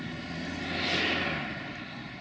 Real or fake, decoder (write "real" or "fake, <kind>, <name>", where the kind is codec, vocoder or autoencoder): real